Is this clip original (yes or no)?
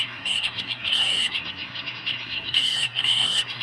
no